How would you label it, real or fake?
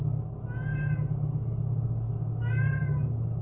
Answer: real